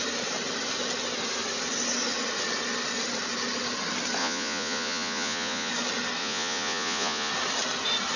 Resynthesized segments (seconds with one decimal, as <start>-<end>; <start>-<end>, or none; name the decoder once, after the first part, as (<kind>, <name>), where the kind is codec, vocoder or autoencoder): 4.2-5.7 (vocoder, Vocos); 6.2-7.3